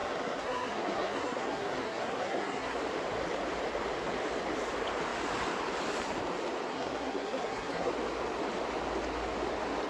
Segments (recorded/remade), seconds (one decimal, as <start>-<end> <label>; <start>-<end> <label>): 0.0-2.8 remade; 2.8-6.7 recorded; 6.7-7.9 remade; 7.9-9.9 recorded